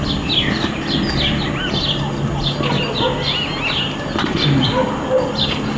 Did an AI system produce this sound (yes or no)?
no